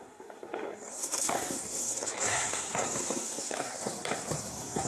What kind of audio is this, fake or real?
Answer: fake